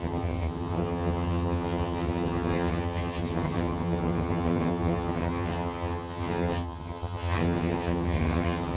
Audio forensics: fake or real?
fake